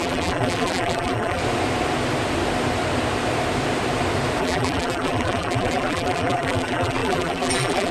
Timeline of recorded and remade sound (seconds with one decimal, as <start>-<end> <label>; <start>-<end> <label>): 0.0-1.4 remade; 1.4-4.4 recorded; 4.4-7.9 remade

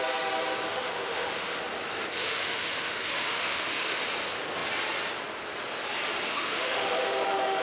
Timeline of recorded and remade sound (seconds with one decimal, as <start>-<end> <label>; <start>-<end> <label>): 0.0-0.7 recorded; 0.7-1.6 remade; 1.6-2.1 recorded; 2.1-4.0 remade; 4.0-6.3 recorded; 6.3-7.6 remade

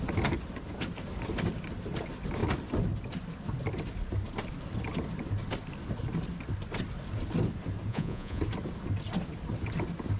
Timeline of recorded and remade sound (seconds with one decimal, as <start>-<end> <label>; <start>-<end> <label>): 0.0-7.9 recorded; 7.9-8.4 remade; 8.4-10.2 recorded

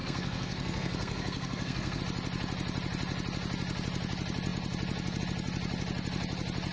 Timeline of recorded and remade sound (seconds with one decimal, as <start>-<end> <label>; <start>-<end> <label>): 0.0-2.0 remade; 2.0-6.7 recorded

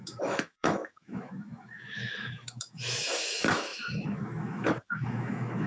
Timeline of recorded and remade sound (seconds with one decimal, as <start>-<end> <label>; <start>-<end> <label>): 0.0-5.7 remade

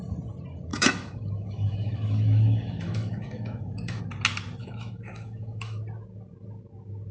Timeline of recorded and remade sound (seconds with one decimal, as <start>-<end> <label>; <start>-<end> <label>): 0.0-0.7 recorded; 0.7-4.0 remade; 4.0-4.6 recorded; 4.6-5.8 remade; 5.8-7.1 recorded

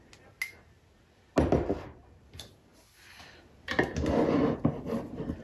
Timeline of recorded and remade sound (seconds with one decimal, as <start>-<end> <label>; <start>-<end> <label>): 0.0-5.4 recorded